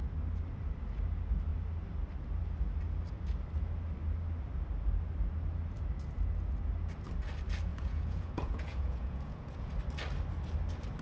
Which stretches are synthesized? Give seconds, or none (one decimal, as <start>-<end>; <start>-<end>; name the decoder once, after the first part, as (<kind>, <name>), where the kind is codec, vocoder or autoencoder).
7.7-9.7 (vocoder, Vocos)